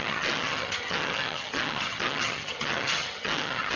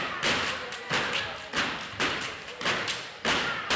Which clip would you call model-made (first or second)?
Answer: first